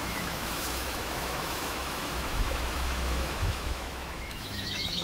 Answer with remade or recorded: remade